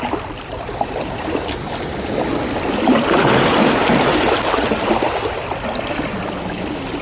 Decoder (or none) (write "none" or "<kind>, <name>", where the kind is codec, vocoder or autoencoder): none